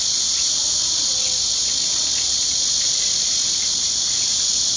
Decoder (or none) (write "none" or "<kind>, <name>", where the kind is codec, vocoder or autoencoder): none